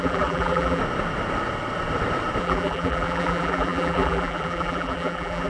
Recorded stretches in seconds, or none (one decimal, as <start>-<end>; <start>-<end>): 0.8-2.4